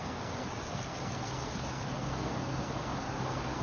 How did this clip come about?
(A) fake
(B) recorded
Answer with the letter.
A